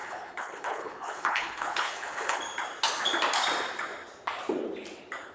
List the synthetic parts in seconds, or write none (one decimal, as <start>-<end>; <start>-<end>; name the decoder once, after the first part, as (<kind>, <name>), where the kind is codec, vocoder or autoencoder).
0.0-2.4 (codec, HILCodec)